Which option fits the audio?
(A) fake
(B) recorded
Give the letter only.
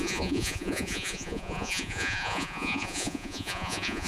A